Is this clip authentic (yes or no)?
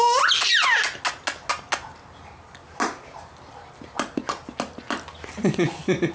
yes